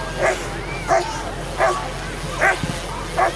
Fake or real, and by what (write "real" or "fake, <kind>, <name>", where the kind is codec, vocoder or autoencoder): real